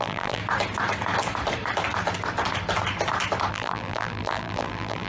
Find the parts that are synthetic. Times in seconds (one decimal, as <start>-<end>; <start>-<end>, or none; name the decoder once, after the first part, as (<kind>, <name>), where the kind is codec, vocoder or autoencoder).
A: 0.0-0.4 (vocoder, BigVGAN v2); 3.5-5.1